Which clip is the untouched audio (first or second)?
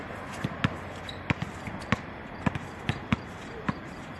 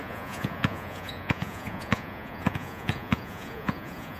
first